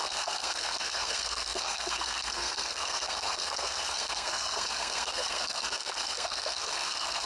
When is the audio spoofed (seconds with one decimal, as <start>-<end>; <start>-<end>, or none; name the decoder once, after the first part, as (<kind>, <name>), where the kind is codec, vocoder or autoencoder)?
0.0-7.3 (codec, SNAC)